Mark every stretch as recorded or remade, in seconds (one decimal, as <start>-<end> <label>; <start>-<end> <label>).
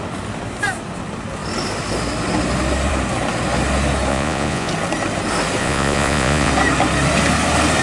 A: 0.0-4.1 recorded; 4.1-4.7 remade; 4.7-5.6 recorded; 5.6-6.5 remade; 6.5-7.8 recorded